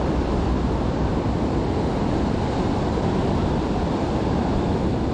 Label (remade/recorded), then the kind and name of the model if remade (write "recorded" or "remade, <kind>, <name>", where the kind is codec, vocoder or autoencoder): recorded